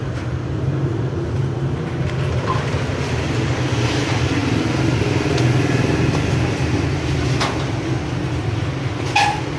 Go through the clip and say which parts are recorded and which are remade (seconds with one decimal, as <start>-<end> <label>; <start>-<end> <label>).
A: 0.0-9.6 recorded